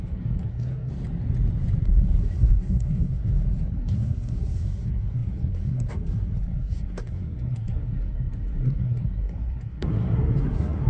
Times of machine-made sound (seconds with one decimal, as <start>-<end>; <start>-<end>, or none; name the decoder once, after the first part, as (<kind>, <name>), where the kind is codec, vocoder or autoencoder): 0.0-0.9 (codec, SNAC); 1.8-10.9